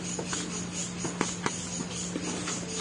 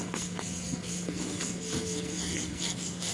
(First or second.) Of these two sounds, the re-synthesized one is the second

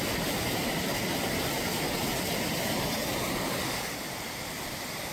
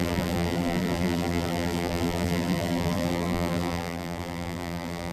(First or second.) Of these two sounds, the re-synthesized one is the second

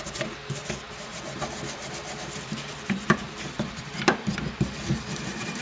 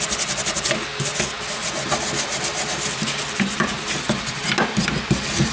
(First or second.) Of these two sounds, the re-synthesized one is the first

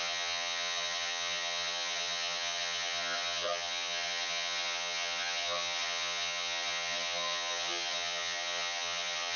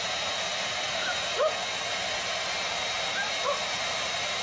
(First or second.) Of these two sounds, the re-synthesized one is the first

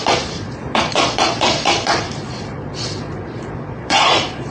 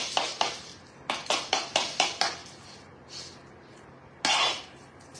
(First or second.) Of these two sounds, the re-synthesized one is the first